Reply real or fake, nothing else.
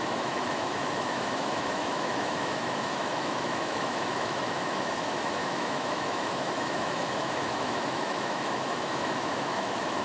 fake